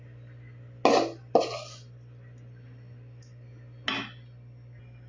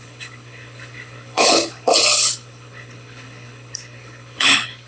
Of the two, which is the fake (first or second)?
second